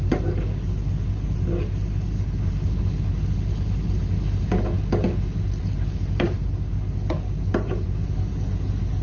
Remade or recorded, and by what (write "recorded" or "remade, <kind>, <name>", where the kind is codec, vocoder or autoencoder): recorded